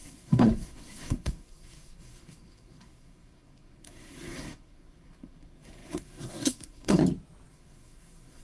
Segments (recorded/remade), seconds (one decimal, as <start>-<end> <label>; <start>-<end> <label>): 0.0-7.0 remade; 7.0-7.5 recorded; 7.5-8.4 remade